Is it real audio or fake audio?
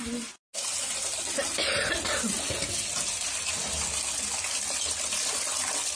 real